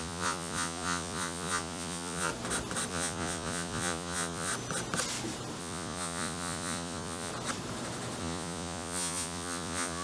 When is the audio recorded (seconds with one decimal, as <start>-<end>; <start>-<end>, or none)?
2.3-2.9; 4.5-5.6; 7.3-8.2